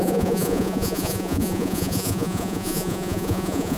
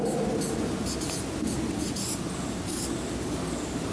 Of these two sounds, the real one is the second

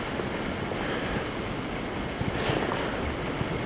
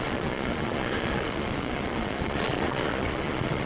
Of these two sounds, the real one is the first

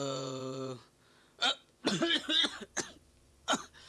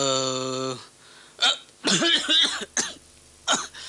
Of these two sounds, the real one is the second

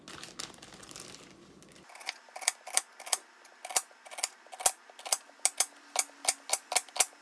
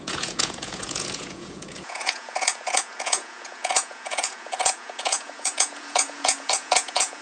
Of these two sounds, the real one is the first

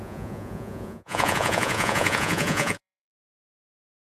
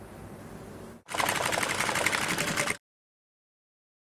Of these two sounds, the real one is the second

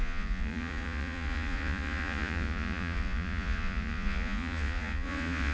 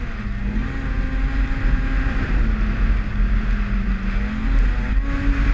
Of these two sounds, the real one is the second